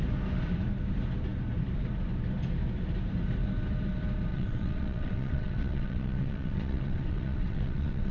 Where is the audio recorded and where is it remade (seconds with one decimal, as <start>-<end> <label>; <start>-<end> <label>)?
0.0-4.3 recorded; 4.3-8.1 remade